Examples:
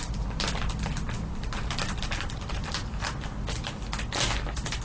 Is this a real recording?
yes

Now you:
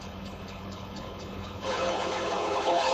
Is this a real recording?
no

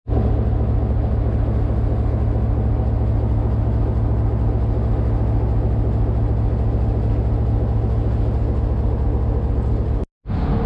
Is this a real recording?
yes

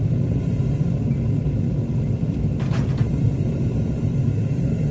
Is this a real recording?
yes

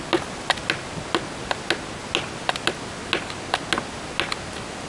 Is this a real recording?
yes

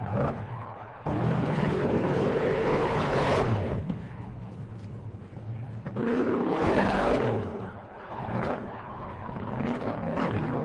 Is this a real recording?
no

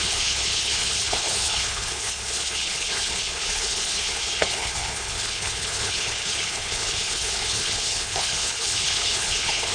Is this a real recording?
no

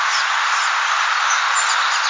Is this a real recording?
yes